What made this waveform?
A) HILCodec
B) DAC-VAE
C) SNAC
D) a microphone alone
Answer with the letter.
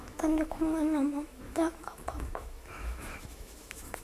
B